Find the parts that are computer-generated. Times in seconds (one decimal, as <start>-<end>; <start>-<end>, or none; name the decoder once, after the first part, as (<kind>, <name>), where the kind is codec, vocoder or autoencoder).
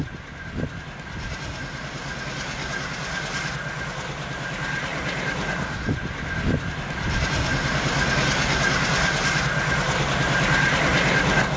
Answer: none